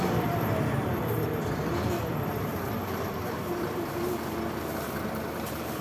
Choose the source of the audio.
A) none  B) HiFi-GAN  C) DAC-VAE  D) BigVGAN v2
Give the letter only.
D